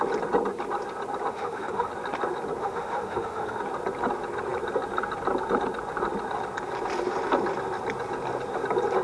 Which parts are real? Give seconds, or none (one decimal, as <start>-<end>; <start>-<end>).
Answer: 0.0-1.3; 1.9-2.6; 3.6-9.0